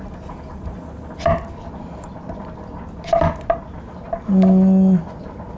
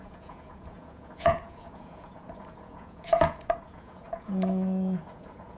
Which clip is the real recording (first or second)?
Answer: first